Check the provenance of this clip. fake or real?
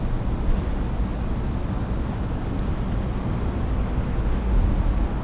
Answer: real